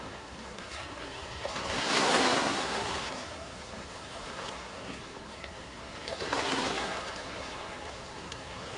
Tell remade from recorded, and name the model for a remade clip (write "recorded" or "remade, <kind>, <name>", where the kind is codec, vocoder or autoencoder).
remade, codec, SNAC